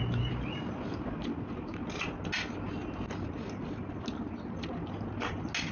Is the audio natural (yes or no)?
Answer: yes